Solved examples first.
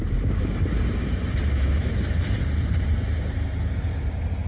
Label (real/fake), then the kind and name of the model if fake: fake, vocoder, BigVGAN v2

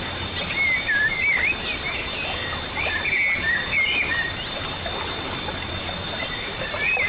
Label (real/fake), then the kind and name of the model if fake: real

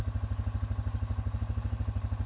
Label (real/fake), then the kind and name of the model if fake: real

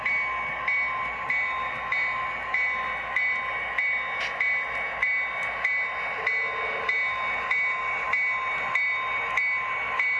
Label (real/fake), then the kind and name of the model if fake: real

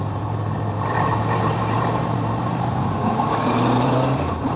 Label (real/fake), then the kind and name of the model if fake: fake, vocoder, BigVGAN v2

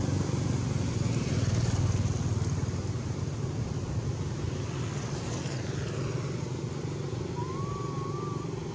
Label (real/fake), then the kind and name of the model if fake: real